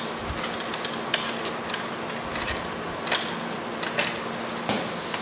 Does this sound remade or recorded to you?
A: recorded